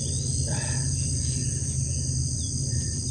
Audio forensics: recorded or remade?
recorded